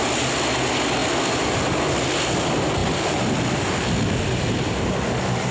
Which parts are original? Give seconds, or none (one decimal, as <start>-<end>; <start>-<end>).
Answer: 0.0-5.5